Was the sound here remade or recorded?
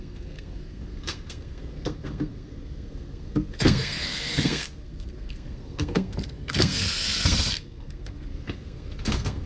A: remade